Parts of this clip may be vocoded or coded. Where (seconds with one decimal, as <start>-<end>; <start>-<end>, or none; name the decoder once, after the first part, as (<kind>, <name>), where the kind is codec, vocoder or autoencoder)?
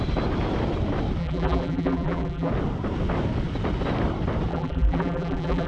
1.2-2.5 (vocoder, BigVGAN v2); 4.5-5.7